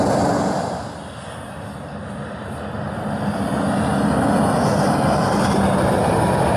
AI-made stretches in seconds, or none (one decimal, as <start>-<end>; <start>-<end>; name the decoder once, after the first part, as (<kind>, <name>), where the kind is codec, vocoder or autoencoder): none